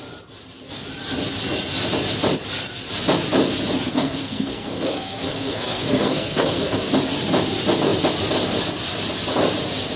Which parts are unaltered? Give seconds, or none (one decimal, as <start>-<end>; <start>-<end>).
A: 0.0-3.9; 6.9-10.0